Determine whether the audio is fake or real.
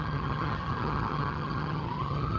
fake